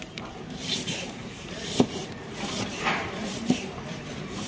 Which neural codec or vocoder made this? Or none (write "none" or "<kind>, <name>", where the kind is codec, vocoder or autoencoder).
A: vocoder, BigVGAN v2